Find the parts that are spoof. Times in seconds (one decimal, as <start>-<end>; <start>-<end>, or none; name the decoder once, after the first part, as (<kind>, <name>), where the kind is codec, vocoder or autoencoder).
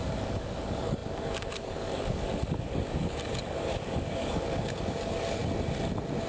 0.0-5.4 (codec, DAC)